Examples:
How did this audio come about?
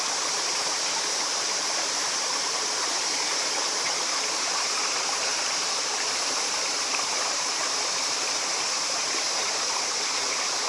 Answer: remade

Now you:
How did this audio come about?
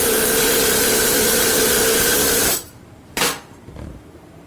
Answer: remade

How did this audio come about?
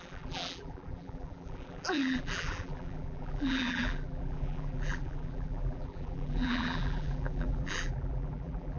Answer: remade